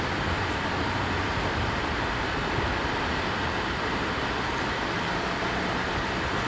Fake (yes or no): no